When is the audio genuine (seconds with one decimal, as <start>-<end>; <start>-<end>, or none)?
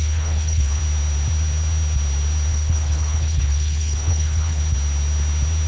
0.8-2.5; 4.6-5.7